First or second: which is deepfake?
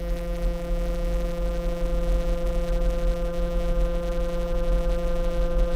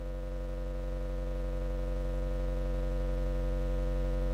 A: first